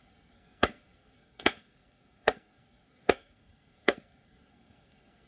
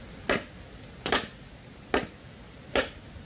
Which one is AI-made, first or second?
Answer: first